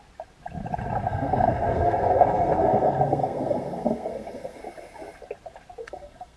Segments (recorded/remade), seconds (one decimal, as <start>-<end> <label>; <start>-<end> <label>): 0.0-1.0 recorded; 1.0-4.6 remade; 4.6-5.8 recorded; 5.8-6.4 remade